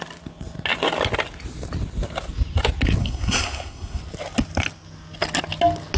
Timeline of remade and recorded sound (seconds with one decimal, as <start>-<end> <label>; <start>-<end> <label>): 0.0-3.0 recorded; 3.0-4.0 remade; 4.0-6.0 recorded

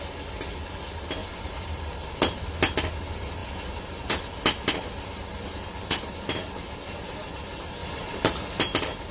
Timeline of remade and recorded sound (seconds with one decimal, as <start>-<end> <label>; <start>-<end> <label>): 0.0-1.2 recorded; 1.2-2.1 remade; 2.1-7.8 recorded; 7.8-8.6 remade; 8.6-9.1 recorded